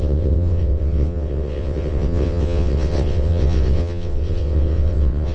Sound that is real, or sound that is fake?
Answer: fake